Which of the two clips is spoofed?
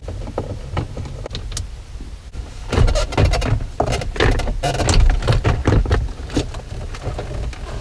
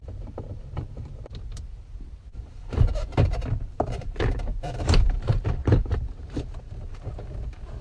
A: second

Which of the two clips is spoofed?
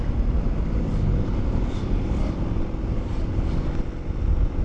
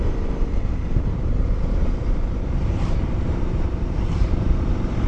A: second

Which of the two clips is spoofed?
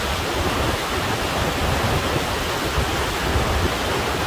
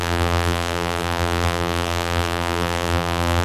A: second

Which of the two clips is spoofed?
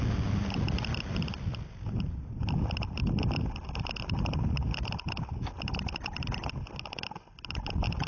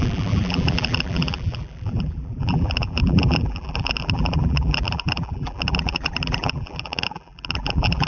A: second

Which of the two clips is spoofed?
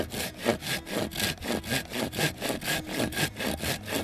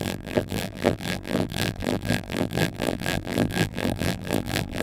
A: second